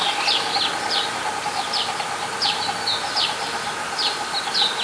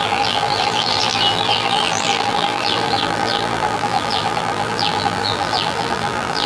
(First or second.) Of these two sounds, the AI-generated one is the second